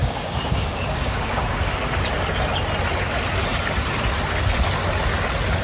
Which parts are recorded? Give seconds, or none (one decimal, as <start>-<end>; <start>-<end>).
1.7-5.6